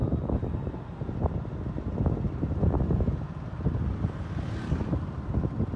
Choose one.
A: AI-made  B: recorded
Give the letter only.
B